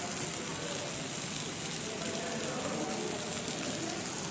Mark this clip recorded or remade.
recorded